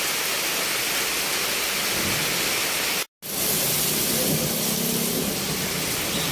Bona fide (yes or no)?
yes